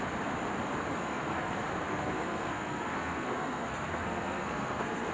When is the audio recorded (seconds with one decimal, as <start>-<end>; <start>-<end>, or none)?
0.0-0.9; 1.5-1.9

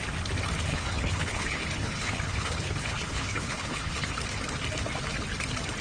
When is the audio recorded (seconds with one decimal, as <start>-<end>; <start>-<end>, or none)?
0.0-0.7; 4.1-5.8

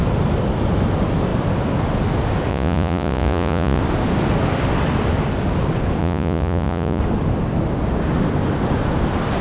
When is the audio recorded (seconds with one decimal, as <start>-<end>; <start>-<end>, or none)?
0.0-2.5; 3.8-6.0; 7.0-9.4

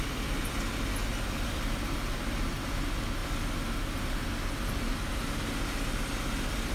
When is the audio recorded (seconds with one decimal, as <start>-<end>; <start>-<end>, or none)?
0.0-6.7